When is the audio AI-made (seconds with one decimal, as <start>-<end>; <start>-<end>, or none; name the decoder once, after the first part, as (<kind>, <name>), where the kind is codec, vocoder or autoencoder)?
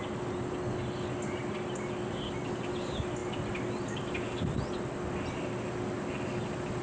none